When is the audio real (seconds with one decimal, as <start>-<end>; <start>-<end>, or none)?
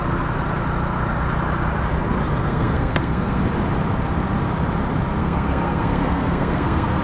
0.0-2.4; 3.4-5.2